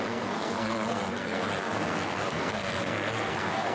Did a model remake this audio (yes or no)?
yes